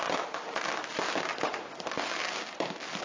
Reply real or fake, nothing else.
real